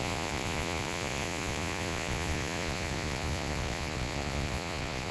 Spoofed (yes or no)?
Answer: yes